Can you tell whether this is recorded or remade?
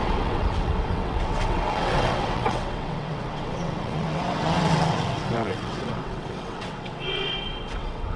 remade